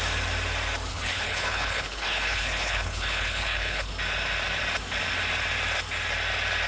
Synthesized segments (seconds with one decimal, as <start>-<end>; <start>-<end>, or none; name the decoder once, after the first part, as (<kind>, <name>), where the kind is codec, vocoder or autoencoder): 0.9-3.9 (codec, HILCodec)